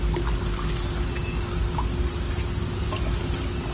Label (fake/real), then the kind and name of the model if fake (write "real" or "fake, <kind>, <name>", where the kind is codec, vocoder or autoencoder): real